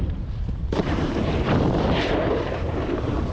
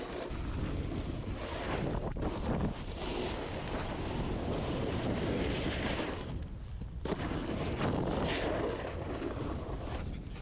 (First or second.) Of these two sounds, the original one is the second